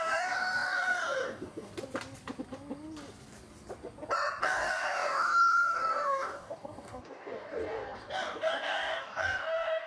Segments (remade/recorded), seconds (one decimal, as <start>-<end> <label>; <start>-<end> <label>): 0.0-1.7 remade; 1.7-4.4 recorded; 4.4-9.9 remade